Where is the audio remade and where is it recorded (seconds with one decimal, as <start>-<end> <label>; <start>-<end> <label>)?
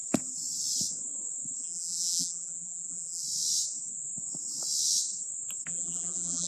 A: 0.0-1.6 recorded; 1.6-3.2 remade; 3.2-5.7 recorded; 5.7-6.5 remade